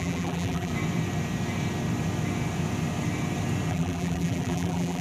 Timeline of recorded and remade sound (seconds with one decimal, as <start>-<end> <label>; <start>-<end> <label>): 0.0-0.7 remade; 0.7-3.7 recorded; 3.7-5.0 remade